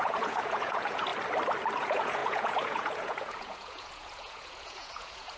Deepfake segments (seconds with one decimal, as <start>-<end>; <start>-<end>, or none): 0.0-1.1; 1.8-5.4